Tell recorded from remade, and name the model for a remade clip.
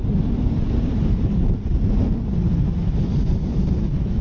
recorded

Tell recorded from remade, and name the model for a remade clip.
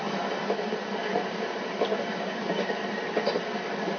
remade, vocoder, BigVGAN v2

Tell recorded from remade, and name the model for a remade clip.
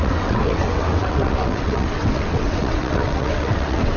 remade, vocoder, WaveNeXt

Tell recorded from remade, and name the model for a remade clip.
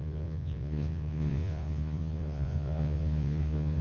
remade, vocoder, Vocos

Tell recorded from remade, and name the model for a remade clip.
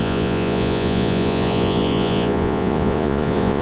remade, vocoder, Vocos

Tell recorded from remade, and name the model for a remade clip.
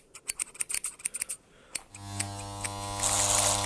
recorded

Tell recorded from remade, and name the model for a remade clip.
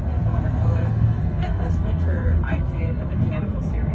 remade, codec, SNAC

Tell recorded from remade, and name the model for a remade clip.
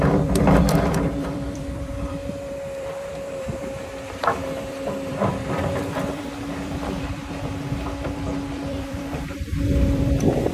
remade, vocoder, BigVGAN v2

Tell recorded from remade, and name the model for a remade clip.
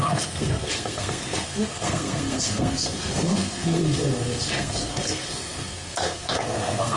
remade, codec, SNAC